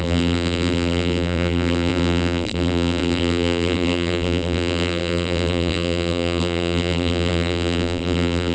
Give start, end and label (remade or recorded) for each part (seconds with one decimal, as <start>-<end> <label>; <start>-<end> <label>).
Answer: 0.0-8.5 remade